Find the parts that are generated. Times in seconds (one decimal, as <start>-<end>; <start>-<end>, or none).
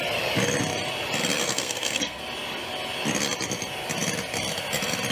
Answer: 1.4-2.2